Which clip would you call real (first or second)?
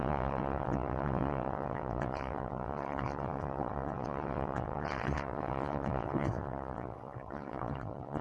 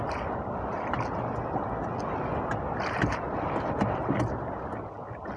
second